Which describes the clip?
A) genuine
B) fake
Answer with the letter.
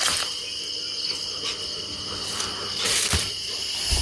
B